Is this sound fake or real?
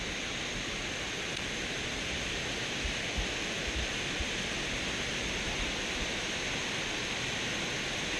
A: real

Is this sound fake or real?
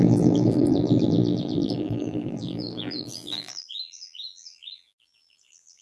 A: fake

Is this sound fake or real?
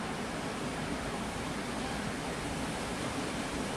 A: fake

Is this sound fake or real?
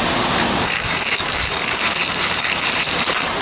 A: fake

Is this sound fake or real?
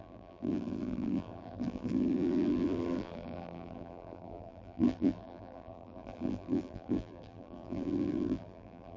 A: fake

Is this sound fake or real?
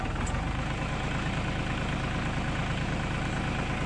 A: real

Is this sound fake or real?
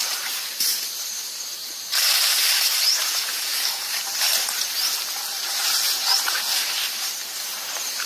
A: fake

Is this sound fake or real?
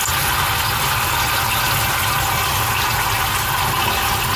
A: real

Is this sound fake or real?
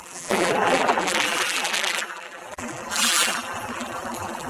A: fake